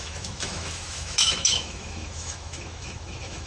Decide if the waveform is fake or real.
fake